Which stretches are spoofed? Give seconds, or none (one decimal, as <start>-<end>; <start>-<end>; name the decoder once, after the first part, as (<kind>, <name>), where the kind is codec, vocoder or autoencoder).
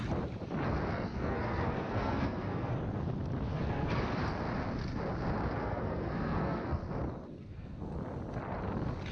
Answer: 0.9-2.7 (codec, SNAC); 3.5-4.0; 5.5-6.8; 7.3-7.9